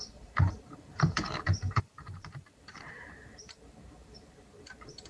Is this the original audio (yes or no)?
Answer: no